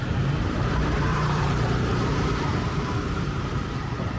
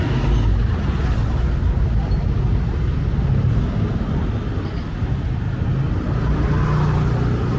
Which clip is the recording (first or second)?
second